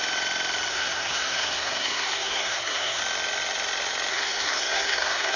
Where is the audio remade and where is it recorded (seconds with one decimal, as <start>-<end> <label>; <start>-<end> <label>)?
0.0-0.7 recorded; 0.7-3.0 remade; 3.0-4.1 recorded; 4.1-5.4 remade